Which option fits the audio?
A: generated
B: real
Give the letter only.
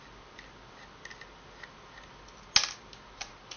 B